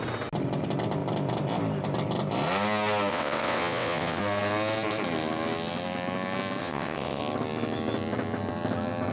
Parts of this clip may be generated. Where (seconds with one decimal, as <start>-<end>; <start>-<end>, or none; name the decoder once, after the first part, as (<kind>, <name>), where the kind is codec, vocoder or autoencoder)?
3.1-4.2 (vocoder, WaveNeXt); 6.6-7.2